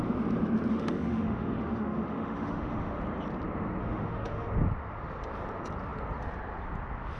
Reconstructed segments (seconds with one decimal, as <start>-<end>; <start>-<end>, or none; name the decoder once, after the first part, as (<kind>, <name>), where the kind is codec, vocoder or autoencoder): 0.7-3.0 (autoencoder, DAC-VAE); 3.8-4.5